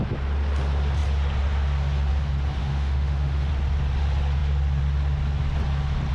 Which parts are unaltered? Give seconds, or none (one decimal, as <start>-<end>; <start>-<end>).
0.0-2.6; 3.5-6.1

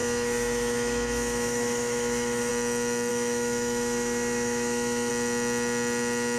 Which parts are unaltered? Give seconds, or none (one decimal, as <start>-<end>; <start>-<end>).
2.5-3.1; 5.1-6.4

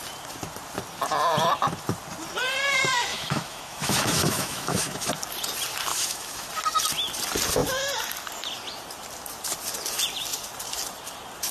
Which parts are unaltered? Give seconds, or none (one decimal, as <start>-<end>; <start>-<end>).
0.0-3.1; 5.1-5.9; 6.5-11.5

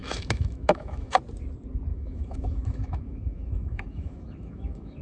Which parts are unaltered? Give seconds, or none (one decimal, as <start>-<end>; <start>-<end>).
1.2-1.9

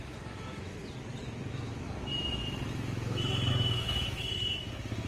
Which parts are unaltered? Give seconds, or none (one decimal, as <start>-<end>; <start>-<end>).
0.8-1.5

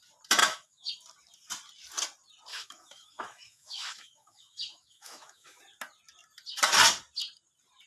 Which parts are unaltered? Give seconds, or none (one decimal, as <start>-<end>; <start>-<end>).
0.0-0.4; 0.9-2.5; 5.6-7.9

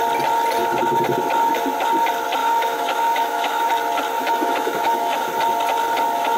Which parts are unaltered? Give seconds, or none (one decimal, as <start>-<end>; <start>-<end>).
0.0-2.4; 3.7-4.2; 5.2-6.4